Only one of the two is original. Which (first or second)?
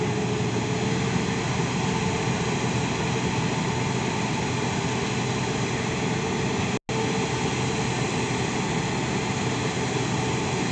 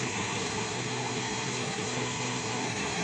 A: first